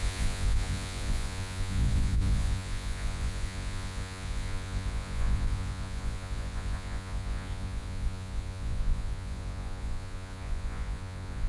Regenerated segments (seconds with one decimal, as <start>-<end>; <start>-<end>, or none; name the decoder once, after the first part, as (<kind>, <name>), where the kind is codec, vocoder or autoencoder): 0.0-11.5 (vocoder, Vocos)